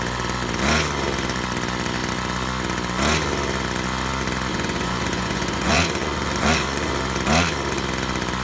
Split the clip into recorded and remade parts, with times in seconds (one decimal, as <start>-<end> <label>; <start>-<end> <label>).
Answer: 0.0-4.5 recorded; 4.5-6.9 remade; 6.9-8.4 recorded